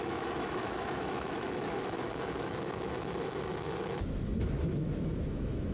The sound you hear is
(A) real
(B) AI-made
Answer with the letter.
B